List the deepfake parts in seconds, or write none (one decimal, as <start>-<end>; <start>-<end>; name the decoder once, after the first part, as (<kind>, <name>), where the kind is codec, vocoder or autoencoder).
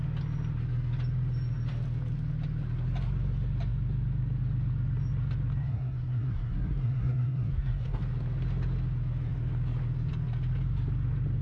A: 5.6-8.0 (codec, SNAC)